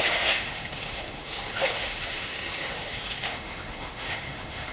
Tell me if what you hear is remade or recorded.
remade